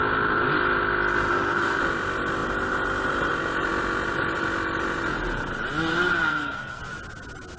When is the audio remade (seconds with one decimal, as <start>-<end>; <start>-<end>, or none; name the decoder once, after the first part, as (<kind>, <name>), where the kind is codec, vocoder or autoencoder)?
1.3-1.8 (codec, SNAC); 6.3-6.8

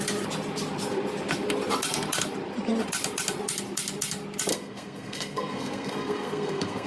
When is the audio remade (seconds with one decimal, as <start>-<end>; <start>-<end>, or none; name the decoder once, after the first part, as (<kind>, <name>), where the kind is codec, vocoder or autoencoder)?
4.5-6.9 (codec, SNAC)